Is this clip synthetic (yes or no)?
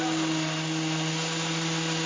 no